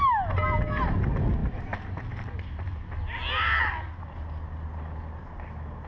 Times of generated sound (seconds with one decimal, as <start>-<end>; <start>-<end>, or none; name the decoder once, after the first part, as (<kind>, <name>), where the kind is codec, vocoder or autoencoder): none